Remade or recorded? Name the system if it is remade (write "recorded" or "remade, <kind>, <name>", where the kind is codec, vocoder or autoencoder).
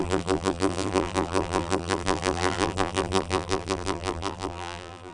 remade, vocoder, BigVGAN v2